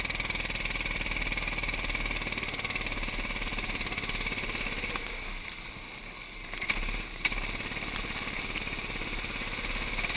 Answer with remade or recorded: recorded